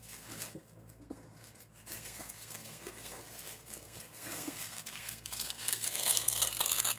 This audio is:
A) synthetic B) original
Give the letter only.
A